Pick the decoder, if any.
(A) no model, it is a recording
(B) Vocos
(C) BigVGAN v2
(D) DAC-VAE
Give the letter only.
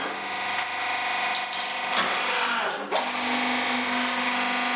A